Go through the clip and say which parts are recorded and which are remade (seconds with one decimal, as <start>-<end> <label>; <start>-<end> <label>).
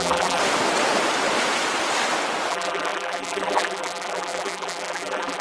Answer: 0.0-0.4 remade; 0.4-2.5 recorded; 2.5-5.4 remade